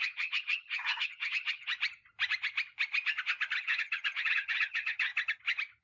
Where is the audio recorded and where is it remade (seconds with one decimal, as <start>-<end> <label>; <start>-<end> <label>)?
0.0-1.7 remade; 1.7-3.6 recorded; 3.6-5.1 remade; 5.1-5.8 recorded